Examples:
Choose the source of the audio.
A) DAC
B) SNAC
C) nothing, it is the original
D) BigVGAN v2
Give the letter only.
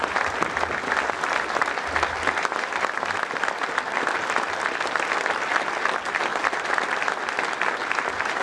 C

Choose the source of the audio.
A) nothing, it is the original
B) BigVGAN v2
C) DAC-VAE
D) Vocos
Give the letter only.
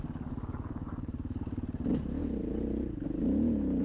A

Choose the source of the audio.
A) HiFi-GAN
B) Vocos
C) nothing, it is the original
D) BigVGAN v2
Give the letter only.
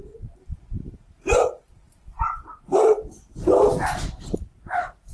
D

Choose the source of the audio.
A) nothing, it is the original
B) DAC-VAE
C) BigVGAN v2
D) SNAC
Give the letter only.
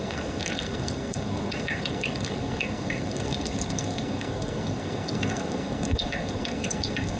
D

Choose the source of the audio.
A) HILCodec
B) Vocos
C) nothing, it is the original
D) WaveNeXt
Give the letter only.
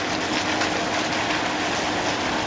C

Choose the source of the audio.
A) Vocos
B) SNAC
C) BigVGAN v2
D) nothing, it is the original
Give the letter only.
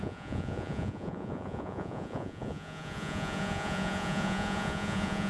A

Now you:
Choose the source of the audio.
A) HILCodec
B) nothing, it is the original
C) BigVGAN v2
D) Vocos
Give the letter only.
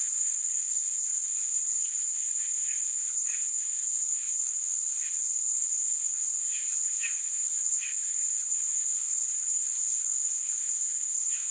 A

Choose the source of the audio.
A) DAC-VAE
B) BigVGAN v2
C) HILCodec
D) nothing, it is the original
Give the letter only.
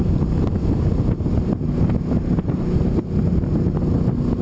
D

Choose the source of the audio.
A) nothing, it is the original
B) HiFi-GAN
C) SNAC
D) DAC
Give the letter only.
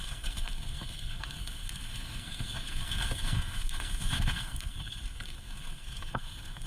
C